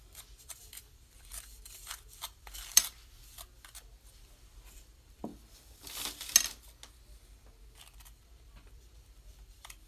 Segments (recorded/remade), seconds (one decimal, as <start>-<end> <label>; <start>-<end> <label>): 0.0-2.7 remade; 2.7-4.1 recorded; 4.1-5.3 remade; 5.3-7.8 recorded; 7.8-9.9 remade